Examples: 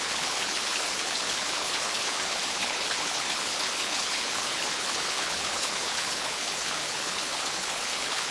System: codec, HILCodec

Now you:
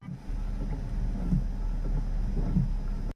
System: none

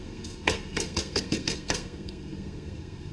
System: codec, SNAC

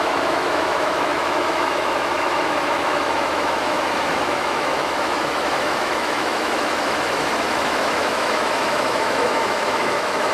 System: autoencoder, DAC-VAE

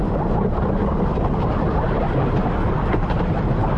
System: none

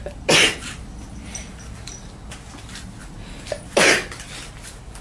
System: none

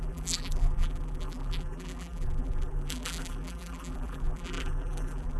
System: vocoder, BigVGAN v2